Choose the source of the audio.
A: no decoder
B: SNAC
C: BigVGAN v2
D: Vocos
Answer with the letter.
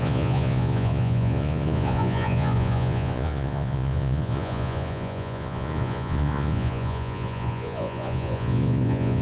D